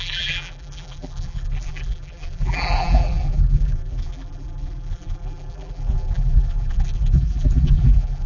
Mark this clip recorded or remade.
remade